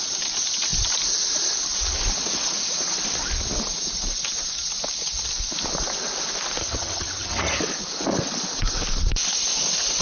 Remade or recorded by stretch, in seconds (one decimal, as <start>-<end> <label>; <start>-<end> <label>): 0.0-6.6 recorded; 6.6-7.6 remade; 7.6-10.0 recorded